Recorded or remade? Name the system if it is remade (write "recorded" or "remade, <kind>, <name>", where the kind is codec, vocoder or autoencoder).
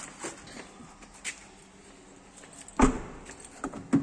recorded